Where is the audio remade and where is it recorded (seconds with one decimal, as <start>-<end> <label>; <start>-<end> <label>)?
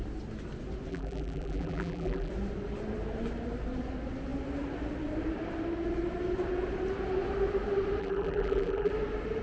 0.0-0.9 recorded; 0.9-2.3 remade; 2.3-8.0 recorded; 8.0-8.9 remade; 8.9-9.4 recorded